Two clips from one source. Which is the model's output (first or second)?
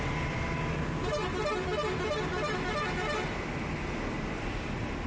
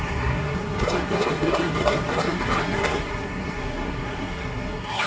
second